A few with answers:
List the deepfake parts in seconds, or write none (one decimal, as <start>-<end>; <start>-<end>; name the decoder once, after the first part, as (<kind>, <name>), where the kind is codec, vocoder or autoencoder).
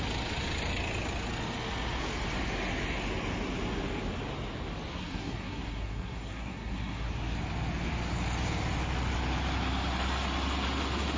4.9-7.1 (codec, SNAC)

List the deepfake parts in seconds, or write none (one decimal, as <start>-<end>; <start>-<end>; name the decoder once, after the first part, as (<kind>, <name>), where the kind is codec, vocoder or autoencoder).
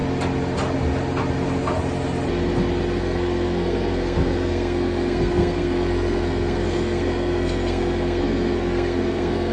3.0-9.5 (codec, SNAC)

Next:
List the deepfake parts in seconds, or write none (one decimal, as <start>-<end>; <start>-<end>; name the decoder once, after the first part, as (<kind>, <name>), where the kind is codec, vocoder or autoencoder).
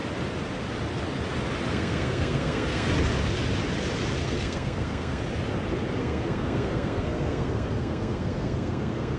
1.7-2.9 (codec, SNAC); 4.2-5.2; 6.0-9.2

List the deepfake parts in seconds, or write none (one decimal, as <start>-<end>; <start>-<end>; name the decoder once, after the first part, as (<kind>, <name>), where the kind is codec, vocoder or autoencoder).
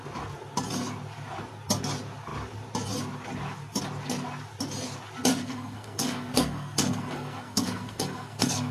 5.3-8.7 (codec, SNAC)